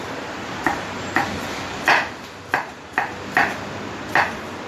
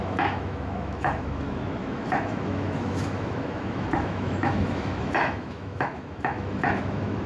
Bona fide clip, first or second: first